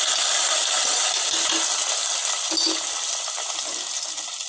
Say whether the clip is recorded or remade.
recorded